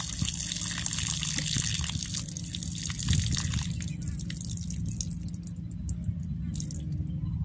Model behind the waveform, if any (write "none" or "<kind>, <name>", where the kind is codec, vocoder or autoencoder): none